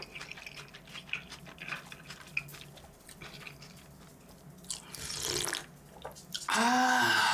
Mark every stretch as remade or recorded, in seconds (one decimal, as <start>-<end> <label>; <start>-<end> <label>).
0.0-7.3 recorded